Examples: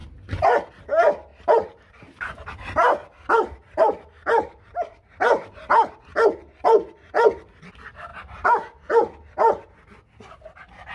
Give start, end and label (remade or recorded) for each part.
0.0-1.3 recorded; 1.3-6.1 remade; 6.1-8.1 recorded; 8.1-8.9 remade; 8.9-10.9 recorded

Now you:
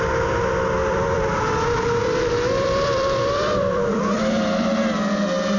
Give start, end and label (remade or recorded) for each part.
0.0-0.8 recorded; 0.8-4.2 remade; 4.2-5.6 recorded

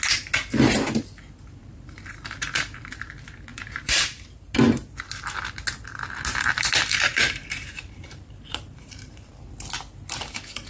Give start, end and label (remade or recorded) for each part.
0.0-1.6 recorded; 1.6-2.9 remade; 2.9-3.5 recorded; 3.5-4.4 remade; 4.4-7.1 recorded; 7.1-9.3 remade; 9.3-10.7 recorded

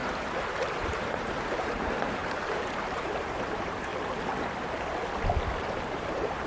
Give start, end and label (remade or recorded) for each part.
0.0-3.9 remade; 3.9-5.6 recorded; 5.6-6.5 remade

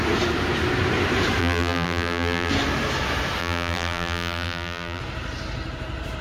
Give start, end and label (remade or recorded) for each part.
0.0-1.4 recorded; 1.4-2.5 remade; 2.5-3.4 recorded; 3.4-5.0 remade; 5.0-6.2 recorded

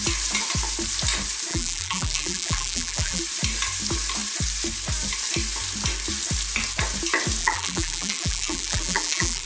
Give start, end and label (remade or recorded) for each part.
0.0-1.5 recorded; 1.5-3.2 remade; 3.2-7.4 recorded; 7.4-9.5 remade